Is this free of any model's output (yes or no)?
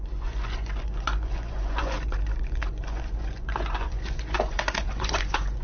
no